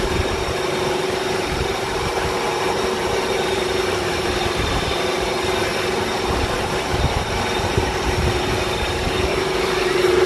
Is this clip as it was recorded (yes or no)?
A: no